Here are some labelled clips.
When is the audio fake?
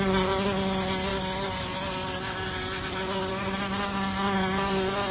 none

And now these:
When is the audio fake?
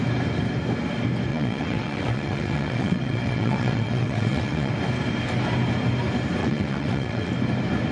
1.3-4.7 (vocoder, WaveNeXt); 6.4-7.3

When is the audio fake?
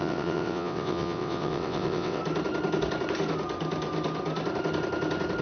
0.0-2.2 (vocoder, WaveNeXt)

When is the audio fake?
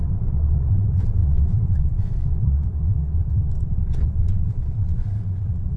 0.0-5.8 (vocoder, WaveNeXt)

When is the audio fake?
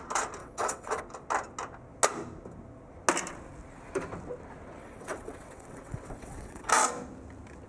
0.4-1.0 (vocoder, WaveNeXt); 4.8-6.7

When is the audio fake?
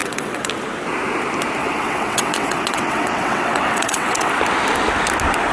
0.0-0.5 (vocoder, WaveNeXt); 1.6-4.3